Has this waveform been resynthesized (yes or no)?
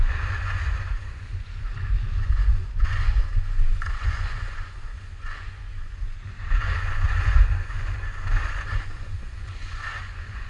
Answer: yes